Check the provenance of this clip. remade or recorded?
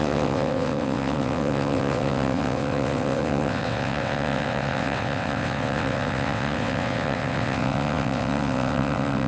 remade